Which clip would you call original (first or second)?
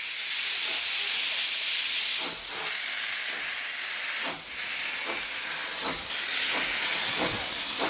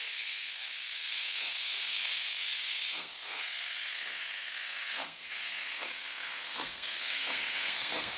first